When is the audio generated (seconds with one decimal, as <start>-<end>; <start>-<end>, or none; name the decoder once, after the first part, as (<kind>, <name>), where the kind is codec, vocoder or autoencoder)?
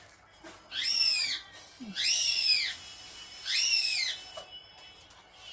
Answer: none